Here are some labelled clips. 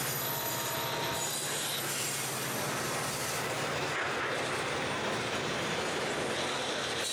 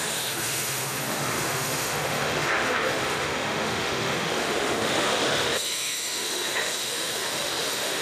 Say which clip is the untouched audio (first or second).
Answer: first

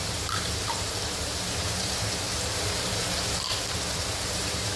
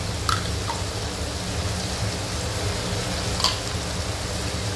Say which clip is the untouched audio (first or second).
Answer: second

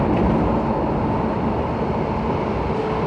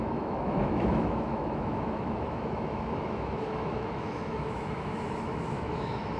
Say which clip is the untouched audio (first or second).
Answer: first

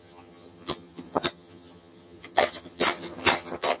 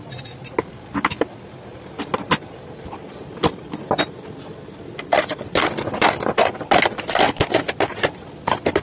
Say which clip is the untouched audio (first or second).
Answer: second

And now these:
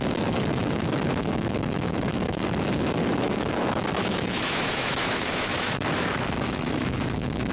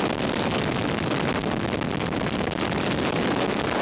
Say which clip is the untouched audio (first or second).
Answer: second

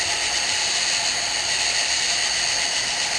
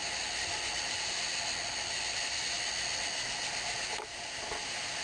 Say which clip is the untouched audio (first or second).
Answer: second